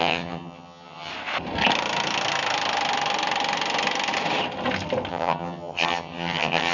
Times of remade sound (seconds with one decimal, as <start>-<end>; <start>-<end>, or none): 0.0-1.1; 5.1-6.7